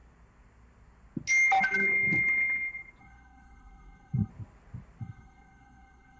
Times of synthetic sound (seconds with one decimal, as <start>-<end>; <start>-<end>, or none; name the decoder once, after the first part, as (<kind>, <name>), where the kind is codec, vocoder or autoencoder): 3.0-4.3 (codec, SNAC); 5.0-6.2